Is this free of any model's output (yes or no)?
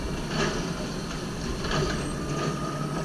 yes